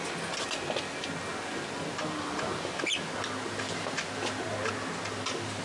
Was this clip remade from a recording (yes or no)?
no